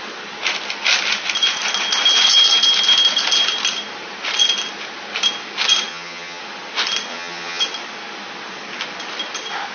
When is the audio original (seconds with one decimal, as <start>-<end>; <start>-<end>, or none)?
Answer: 0.0-5.9; 6.4-7.1; 7.6-9.7